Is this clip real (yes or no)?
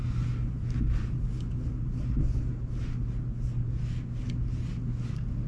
yes